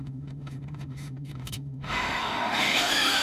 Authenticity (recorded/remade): remade